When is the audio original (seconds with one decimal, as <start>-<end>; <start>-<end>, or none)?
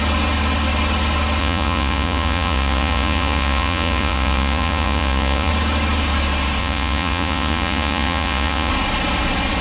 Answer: 0.0-1.4; 5.5-6.6; 8.7-9.6